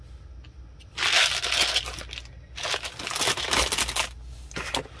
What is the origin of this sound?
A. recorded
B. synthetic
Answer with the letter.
A